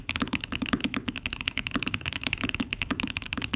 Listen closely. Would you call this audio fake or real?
fake